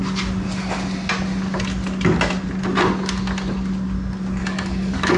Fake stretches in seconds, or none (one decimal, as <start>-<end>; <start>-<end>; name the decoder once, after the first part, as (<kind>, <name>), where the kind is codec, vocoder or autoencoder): 4.4-5.2 (codec, DAC)